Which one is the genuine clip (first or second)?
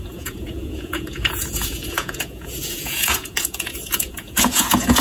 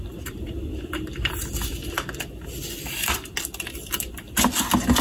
second